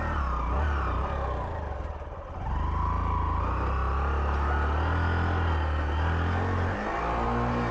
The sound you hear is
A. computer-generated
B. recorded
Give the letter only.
B